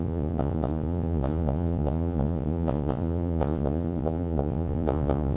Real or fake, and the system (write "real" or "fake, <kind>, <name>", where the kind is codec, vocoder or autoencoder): fake, vocoder, Vocos